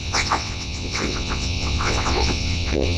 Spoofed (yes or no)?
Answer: yes